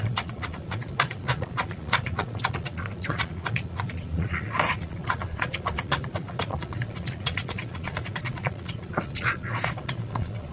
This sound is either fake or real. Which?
fake